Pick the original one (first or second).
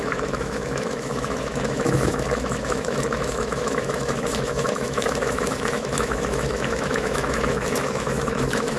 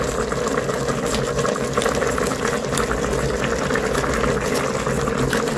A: second